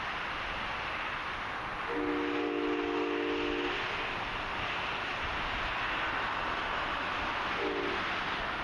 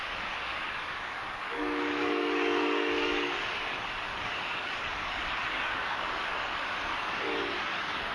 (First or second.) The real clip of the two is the first